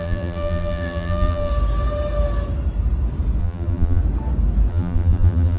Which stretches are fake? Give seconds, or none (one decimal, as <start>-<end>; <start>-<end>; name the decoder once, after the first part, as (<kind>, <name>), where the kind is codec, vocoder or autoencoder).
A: 0.0-1.5 (vocoder, BigVGAN v2); 3.4-4.0; 4.7-5.6